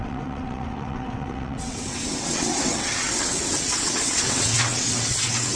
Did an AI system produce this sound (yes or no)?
yes